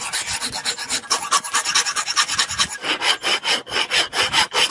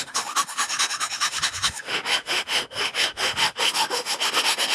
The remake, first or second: second